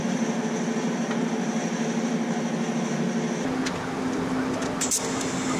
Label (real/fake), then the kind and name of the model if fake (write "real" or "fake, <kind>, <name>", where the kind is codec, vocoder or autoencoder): real